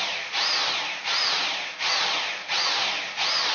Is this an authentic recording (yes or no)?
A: yes